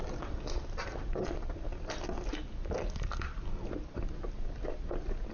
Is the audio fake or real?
real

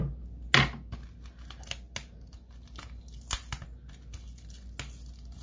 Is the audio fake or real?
real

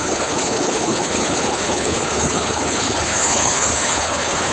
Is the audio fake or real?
fake